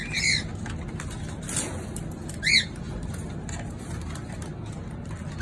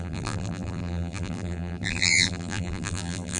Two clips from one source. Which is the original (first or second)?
first